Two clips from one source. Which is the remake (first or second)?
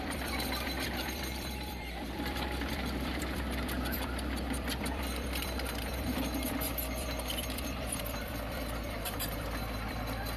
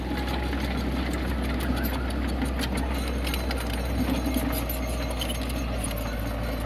first